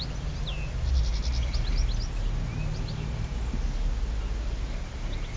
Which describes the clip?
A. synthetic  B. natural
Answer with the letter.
B